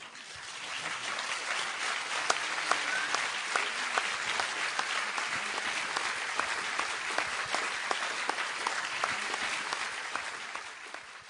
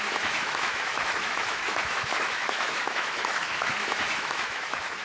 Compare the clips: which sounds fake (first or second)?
second